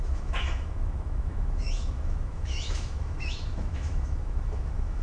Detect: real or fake fake